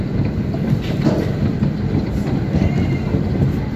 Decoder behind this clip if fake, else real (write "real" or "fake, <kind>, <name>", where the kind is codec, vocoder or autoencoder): real